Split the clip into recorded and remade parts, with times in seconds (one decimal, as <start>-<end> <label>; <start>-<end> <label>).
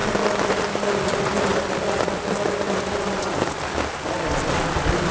0.0-5.1 recorded